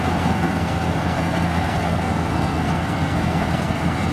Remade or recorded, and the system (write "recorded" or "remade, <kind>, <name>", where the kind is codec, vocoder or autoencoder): remade, codec, SNAC